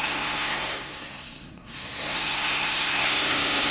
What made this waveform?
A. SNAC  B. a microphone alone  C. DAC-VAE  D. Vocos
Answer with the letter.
A